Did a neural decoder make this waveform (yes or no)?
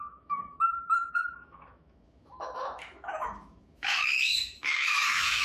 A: yes